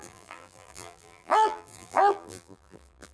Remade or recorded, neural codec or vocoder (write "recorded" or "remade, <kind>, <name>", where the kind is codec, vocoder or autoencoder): remade, vocoder, BigVGAN v2